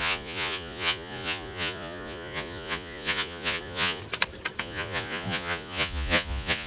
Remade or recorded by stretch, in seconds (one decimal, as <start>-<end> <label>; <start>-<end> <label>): 0.0-4.0 remade; 4.0-4.6 recorded; 4.6-6.7 remade